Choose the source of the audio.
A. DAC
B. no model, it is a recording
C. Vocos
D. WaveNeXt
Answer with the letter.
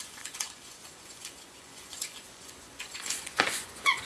C